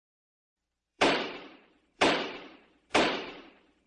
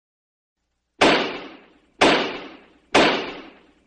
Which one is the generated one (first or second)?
first